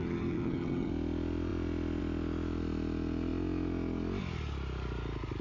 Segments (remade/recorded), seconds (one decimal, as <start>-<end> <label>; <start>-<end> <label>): 0.0-0.9 remade; 0.9-5.4 recorded